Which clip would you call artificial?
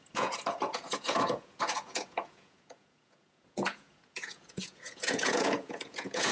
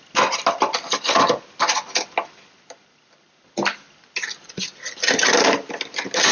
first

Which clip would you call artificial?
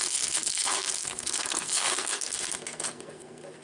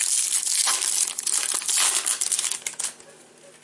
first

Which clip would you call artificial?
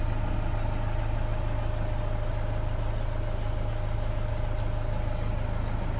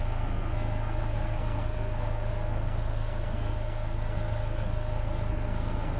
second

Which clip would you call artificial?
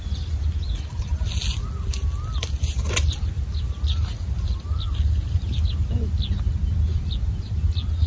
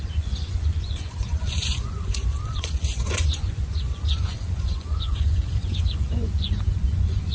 second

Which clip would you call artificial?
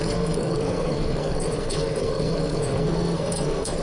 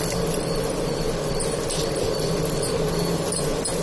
first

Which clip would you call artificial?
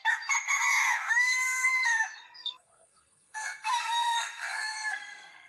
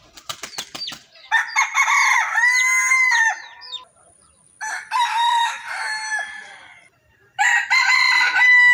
first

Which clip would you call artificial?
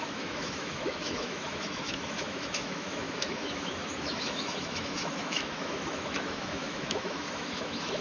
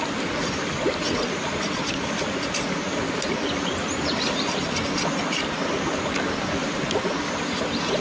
first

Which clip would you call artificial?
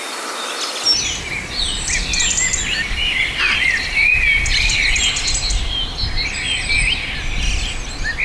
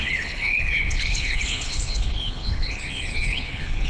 second